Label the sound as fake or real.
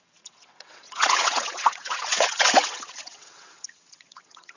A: fake